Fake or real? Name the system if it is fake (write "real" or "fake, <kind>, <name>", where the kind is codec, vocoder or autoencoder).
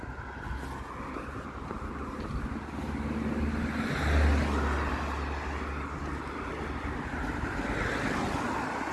real